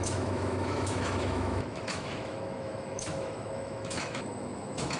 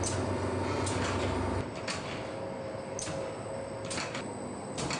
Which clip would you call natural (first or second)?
second